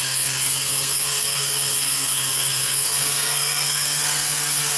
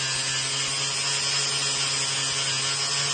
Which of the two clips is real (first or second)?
second